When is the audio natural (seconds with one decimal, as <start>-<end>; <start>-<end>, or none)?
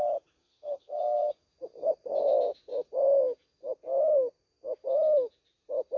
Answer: 0.0-0.4; 1.3-6.0